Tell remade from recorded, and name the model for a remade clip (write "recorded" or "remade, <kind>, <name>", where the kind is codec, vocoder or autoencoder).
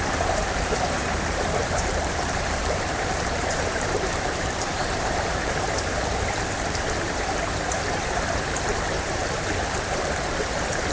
remade, vocoder, BigVGAN v2